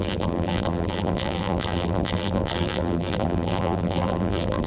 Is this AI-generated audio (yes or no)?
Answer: yes